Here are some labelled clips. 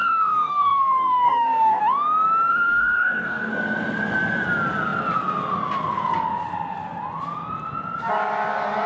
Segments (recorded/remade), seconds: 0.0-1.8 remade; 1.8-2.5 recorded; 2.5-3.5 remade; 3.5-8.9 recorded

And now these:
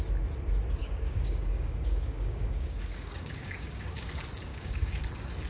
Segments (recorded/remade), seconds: 0.0-0.8 recorded; 0.8-4.1 remade; 4.1-4.5 recorded; 4.5-5.0 remade; 5.0-5.5 recorded

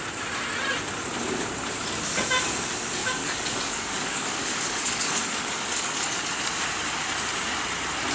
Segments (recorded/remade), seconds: 0.0-3.0 recorded; 3.0-6.2 remade; 6.2-8.1 recorded

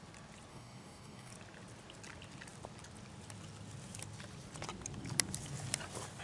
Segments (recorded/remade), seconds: 0.0-0.5 recorded; 0.5-1.3 remade; 1.3-6.2 recorded

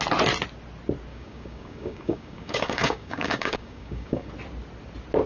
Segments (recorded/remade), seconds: 0.0-1.1 recorded; 1.1-4.3 remade; 4.3-5.3 recorded

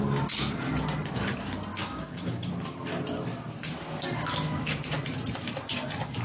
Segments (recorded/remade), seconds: 0.0-1.7 recorded; 1.7-2.5 remade; 2.5-6.2 recorded